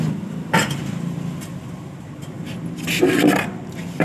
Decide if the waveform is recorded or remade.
recorded